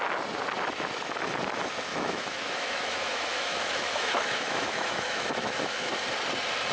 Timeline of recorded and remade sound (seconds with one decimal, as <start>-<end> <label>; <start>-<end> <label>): 0.0-1.9 recorded; 1.9-5.9 remade; 5.9-6.7 recorded